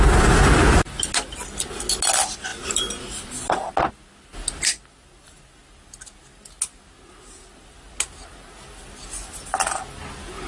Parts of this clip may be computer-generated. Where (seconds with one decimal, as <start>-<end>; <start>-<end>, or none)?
none